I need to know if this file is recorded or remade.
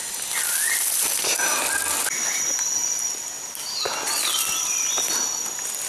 recorded